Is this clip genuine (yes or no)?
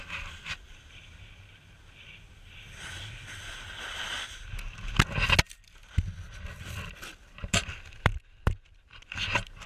yes